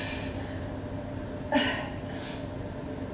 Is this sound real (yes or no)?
yes